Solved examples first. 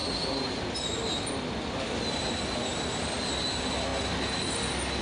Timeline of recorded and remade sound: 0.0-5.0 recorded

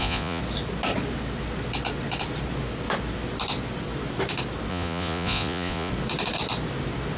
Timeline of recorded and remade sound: 0.0-0.4 remade; 0.4-4.7 recorded; 4.7-5.9 remade; 5.9-7.2 recorded

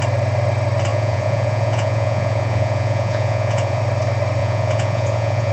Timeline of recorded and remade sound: 0.0-0.9 recorded; 0.9-3.8 remade; 3.8-4.4 recorded; 4.4-5.5 remade

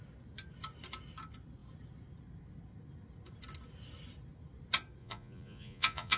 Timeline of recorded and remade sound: 0.0-5.0 recorded; 5.0-6.2 remade

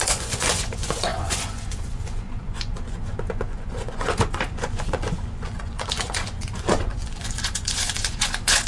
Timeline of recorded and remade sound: 0.0-8.7 remade